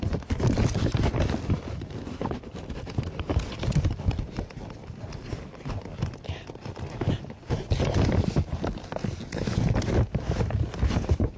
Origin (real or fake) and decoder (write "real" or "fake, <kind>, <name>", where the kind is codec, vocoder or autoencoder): real